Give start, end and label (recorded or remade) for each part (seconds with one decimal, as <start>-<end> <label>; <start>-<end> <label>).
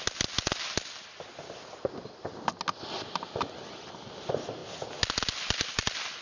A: 0.0-6.2 recorded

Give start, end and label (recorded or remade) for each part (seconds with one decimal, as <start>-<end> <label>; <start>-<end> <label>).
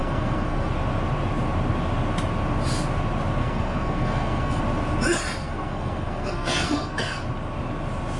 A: 0.0-0.7 remade; 0.7-3.4 recorded; 3.4-4.6 remade; 4.6-5.4 recorded; 5.4-7.2 remade; 7.2-8.2 recorded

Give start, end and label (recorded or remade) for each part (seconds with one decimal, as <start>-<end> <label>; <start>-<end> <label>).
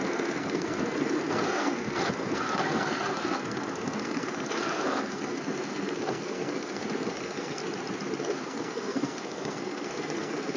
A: 0.0-7.6 remade; 7.6-8.2 recorded; 8.2-10.6 remade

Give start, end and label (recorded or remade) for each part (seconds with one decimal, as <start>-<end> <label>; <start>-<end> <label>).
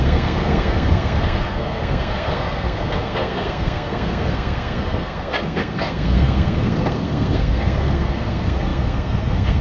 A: 0.0-9.6 remade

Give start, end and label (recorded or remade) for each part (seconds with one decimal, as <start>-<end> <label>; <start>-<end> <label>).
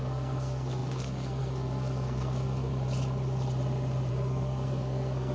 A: 0.0-2.7 remade; 2.7-4.1 recorded; 4.1-5.3 remade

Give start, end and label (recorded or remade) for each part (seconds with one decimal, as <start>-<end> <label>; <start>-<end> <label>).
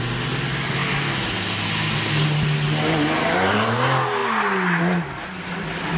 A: 0.0-6.0 recorded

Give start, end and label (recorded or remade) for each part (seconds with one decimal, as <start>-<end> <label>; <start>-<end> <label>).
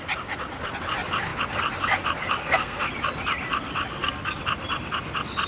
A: 0.0-2.4 recorded; 2.4-2.9 remade; 2.9-3.9 recorded; 3.9-4.4 remade; 4.4-5.5 recorded